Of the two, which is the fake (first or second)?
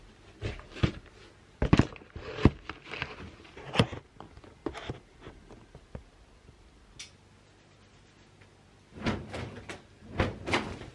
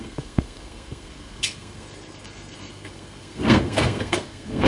second